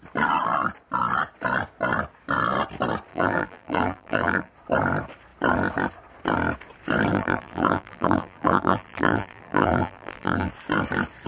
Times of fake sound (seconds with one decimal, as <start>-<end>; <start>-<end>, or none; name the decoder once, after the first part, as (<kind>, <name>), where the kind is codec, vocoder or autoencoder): 3.1-4.5 (vocoder, BigVGAN v2); 7.1-10.5